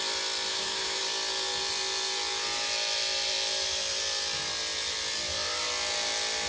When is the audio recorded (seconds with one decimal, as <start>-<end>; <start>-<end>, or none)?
0.0-0.5; 1.0-6.5